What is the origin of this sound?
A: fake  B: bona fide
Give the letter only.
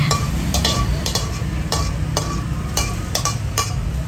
A